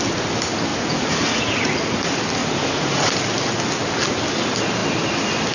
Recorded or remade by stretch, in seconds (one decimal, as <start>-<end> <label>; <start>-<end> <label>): 0.0-0.7 recorded; 0.7-2.0 remade; 2.0-2.4 recorded; 2.4-3.1 remade; 3.1-5.5 recorded